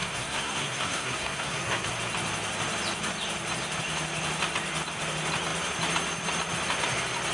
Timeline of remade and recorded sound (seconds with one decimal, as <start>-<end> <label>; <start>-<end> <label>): 0.0-1.9 remade; 1.9-7.3 recorded